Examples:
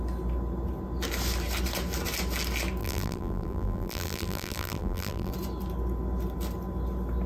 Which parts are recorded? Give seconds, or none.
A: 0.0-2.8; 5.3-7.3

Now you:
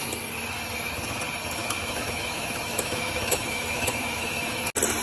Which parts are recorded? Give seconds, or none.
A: 0.0-1.6; 4.6-5.0

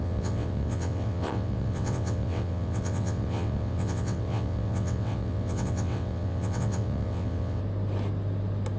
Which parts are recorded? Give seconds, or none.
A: 7.6-8.8